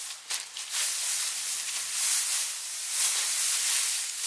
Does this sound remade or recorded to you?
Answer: recorded